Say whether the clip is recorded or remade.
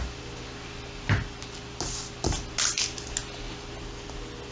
recorded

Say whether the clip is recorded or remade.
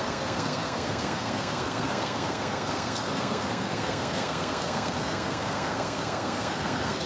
remade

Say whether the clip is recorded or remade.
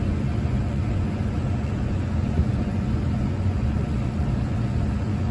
remade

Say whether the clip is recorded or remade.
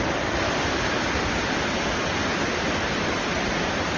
recorded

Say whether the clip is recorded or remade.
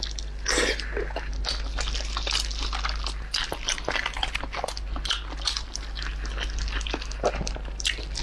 recorded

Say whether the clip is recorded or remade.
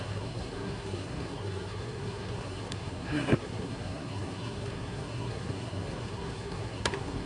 remade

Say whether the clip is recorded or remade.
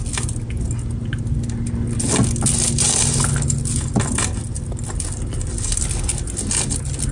recorded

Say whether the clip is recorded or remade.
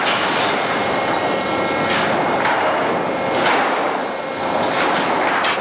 recorded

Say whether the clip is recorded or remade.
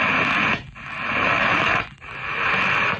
recorded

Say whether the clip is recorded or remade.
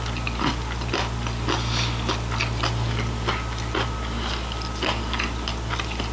recorded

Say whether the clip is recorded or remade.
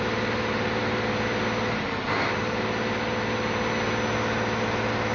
recorded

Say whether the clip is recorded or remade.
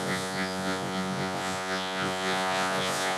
remade